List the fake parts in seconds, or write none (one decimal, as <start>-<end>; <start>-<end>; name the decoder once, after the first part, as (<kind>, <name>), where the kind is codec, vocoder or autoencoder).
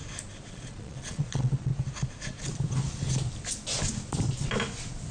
0.5-1.7 (vocoder, Vocos)